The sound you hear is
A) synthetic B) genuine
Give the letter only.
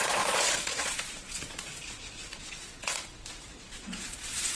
A